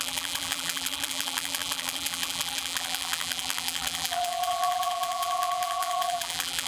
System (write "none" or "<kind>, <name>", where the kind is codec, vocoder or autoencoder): vocoder, BigVGAN v2